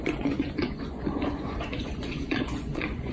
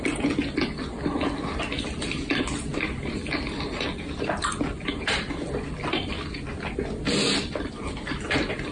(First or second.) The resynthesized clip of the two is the first